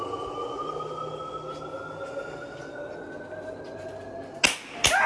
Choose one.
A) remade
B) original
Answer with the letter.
B